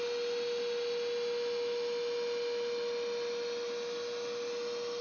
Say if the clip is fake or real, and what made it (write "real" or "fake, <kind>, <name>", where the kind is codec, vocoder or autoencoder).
real